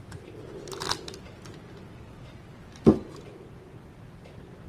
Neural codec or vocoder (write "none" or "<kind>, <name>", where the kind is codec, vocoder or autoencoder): none